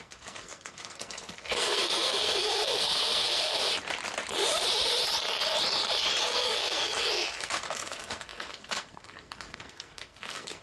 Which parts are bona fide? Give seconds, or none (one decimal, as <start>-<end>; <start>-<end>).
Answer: 3.7-6.2